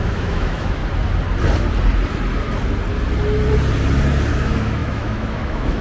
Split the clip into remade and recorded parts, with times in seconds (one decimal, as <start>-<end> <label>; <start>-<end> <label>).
0.0-0.8 remade; 0.8-4.3 recorded; 4.3-5.8 remade

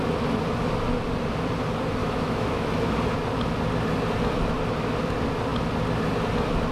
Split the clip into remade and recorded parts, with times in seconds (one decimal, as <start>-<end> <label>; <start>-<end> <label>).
0.0-2.0 recorded; 2.0-2.9 remade; 2.9-6.7 recorded